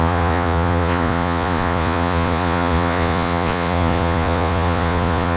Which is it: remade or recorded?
remade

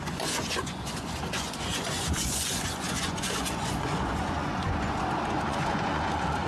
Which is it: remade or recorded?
remade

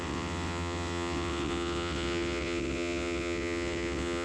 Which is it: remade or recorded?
remade